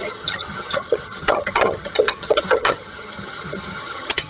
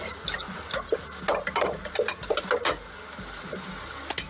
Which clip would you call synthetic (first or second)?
first